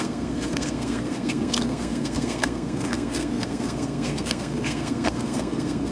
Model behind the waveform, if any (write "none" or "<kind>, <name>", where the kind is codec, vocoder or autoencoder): codec, SNAC